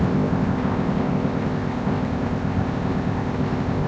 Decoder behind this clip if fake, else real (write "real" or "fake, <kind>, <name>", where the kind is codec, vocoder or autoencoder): fake, codec, ZipCodec